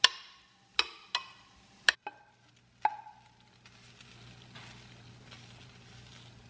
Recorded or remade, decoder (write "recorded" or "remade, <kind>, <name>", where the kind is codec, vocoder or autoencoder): recorded